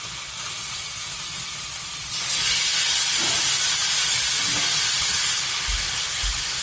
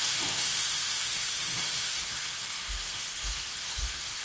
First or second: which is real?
first